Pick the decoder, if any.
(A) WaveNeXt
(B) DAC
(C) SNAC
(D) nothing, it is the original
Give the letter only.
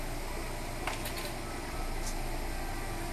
D